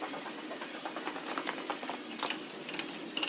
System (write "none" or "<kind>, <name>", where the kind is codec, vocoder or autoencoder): none